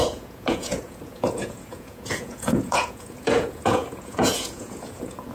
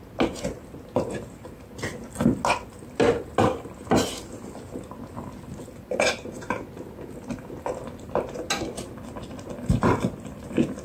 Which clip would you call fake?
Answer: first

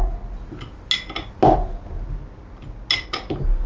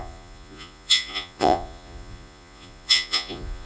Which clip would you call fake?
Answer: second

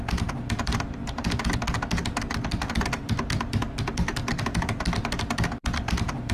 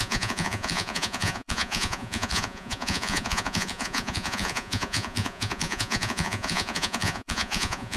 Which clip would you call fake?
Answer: second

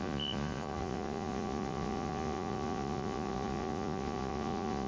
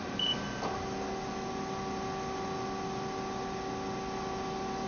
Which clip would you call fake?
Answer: first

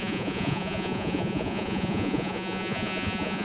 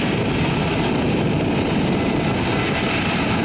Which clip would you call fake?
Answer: first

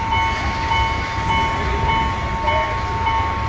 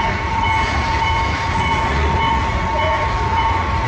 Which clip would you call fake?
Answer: second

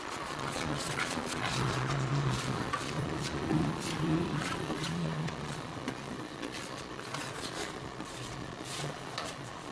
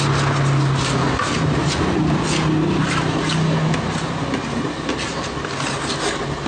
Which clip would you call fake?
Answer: first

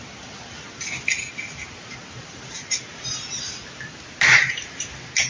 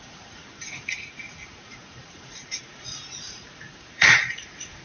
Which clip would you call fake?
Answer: second